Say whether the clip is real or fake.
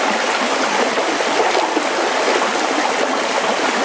real